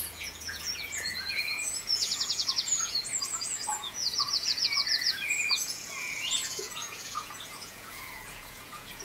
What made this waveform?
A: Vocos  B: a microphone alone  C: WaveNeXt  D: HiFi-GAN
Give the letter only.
A